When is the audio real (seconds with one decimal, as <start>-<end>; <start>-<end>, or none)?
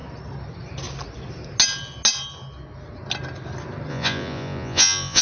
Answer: 0.0-3.9